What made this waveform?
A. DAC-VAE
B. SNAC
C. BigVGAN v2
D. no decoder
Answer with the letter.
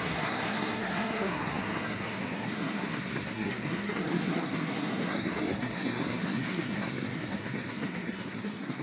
B